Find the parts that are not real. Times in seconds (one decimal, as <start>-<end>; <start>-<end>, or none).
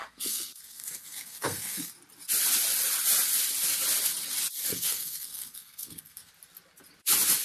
0.0-1.9; 4.7-6.3